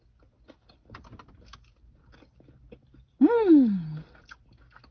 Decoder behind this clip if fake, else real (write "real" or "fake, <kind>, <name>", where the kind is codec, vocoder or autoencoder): real